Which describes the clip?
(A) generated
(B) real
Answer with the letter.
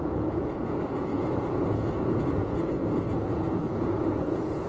A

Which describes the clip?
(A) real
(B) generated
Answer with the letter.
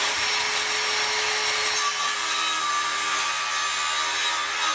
A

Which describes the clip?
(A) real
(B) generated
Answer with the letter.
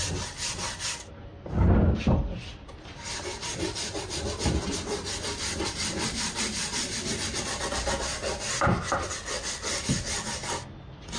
A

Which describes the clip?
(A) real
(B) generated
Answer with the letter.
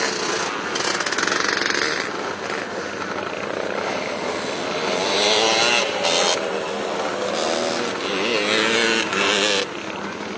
A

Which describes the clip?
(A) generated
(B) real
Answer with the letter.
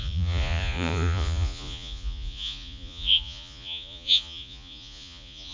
A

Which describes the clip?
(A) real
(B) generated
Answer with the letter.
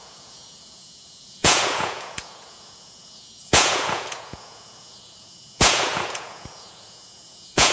B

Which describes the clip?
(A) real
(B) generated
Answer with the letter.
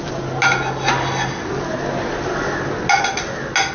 A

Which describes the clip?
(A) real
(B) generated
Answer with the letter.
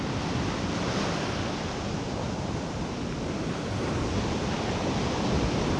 A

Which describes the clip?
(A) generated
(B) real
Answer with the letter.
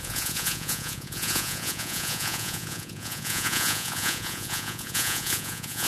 A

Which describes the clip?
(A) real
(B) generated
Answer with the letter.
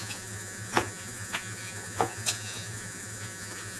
B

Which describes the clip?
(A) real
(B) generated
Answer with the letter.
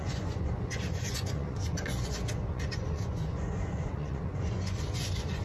B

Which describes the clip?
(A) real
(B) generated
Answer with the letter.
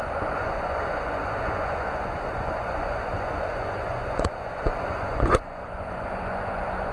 B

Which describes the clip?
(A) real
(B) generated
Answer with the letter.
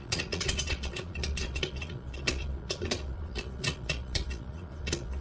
B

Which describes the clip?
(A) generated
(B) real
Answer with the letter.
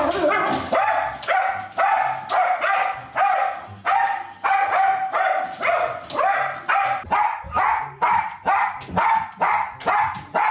B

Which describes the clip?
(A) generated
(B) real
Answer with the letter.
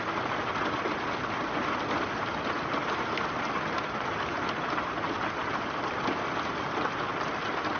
B